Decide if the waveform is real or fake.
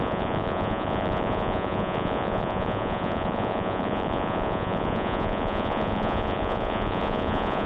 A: fake